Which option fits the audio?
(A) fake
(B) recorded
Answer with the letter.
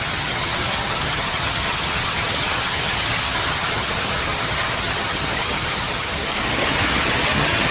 A